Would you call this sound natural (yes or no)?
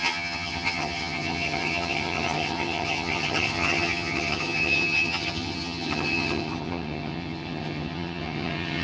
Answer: no